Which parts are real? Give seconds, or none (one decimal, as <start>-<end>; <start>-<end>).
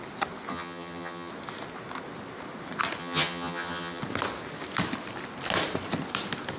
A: 0.0-0.5; 1.3-3.0; 4.0-6.6